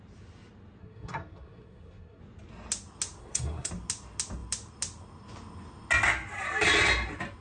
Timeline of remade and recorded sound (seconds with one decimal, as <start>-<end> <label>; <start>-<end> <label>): 0.0-0.8 recorded; 0.8-2.2 remade; 2.2-3.2 recorded; 3.2-3.7 remade; 3.7-7.4 recorded